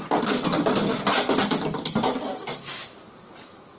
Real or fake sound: real